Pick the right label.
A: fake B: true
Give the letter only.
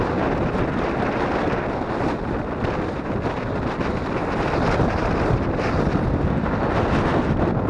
B